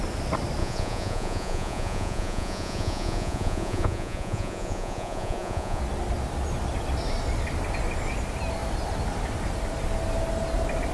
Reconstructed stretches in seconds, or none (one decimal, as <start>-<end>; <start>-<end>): 0.6-5.8